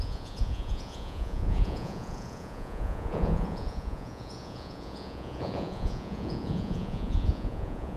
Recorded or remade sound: remade